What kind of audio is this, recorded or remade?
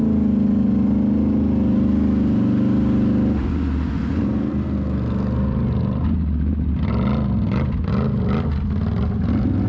recorded